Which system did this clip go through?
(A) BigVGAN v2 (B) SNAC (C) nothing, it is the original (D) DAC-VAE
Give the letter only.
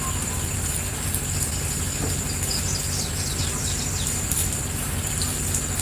C